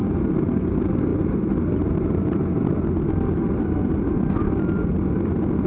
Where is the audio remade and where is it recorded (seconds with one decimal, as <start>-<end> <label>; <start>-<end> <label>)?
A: 0.0-5.7 recorded